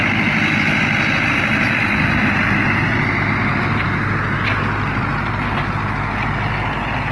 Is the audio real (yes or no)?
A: yes